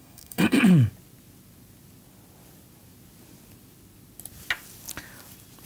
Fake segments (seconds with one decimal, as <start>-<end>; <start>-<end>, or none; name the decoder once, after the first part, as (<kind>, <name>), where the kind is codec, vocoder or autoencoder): 0.0-0.6 (codec, SNAC)